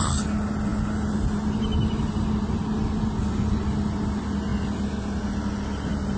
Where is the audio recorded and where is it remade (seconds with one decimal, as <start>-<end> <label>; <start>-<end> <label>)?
0.0-6.2 recorded